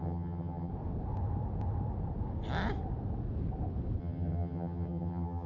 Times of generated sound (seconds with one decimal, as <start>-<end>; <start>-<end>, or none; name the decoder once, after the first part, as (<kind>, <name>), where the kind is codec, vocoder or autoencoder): 0.0-0.7 (vocoder, HiFi-GAN); 4.0-5.5